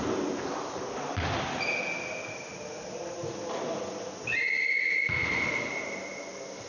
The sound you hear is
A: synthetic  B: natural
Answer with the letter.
B